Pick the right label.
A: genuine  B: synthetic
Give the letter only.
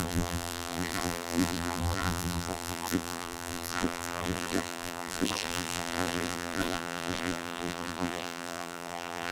B